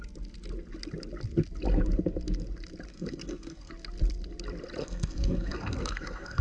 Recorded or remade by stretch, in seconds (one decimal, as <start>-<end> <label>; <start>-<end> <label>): 0.0-2.9 recorded; 2.9-3.7 remade; 3.7-4.8 recorded; 4.8-6.4 remade